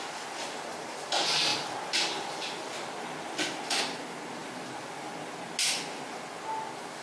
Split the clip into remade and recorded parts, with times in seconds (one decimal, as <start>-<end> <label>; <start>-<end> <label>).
0.0-1.5 recorded; 1.5-3.8 remade; 3.8-4.4 recorded; 4.4-5.1 remade; 5.1-7.0 recorded